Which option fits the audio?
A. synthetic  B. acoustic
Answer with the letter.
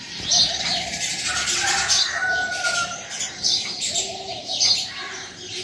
A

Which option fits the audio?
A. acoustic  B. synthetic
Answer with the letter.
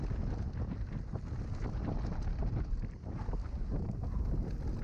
A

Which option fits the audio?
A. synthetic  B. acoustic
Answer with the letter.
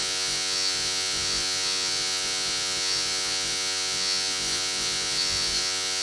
A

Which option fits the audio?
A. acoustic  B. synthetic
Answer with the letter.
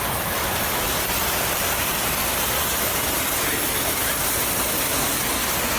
A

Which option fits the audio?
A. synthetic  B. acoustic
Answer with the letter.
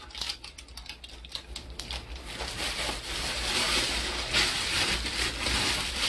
B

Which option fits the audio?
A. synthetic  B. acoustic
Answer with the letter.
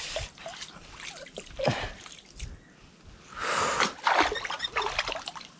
B